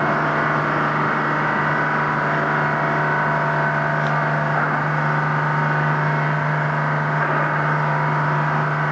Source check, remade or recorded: recorded